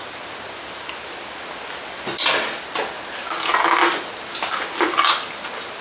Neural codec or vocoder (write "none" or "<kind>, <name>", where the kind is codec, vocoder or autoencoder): none